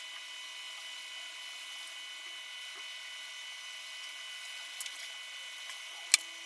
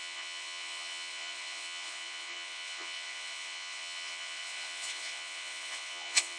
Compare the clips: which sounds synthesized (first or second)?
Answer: second